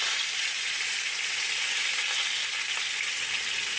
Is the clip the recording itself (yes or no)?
yes